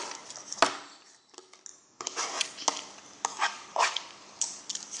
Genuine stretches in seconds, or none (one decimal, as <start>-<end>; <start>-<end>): 0.0-1.7; 2.2-3.3; 4.6-5.0